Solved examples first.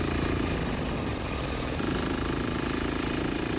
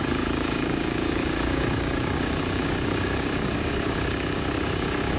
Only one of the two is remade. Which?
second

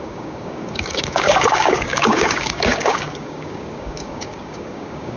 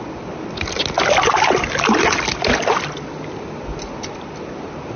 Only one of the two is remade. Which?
first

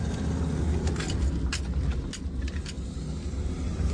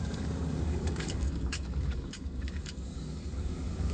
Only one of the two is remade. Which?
second